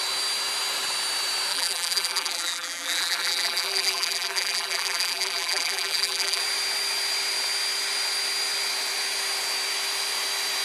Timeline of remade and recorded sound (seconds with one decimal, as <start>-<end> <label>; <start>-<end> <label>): 0.0-1.5 recorded; 1.5-6.4 remade; 6.4-10.6 recorded